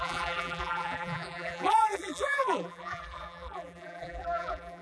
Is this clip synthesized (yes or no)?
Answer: yes